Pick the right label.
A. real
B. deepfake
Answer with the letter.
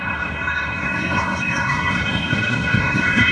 B